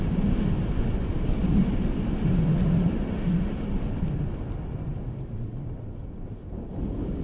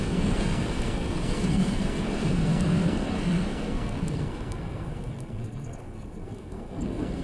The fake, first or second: second